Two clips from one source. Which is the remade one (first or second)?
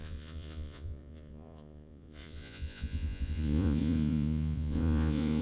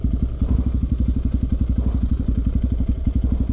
first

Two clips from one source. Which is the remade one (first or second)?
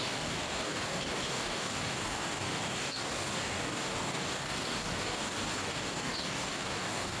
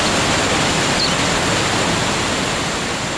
first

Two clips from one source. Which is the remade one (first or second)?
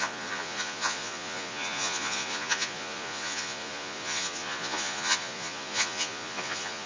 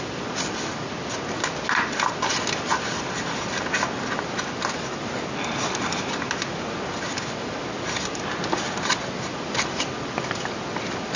first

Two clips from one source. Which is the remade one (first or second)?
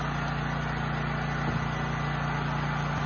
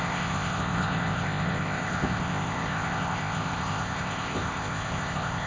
second